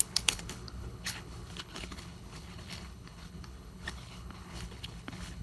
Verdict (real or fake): fake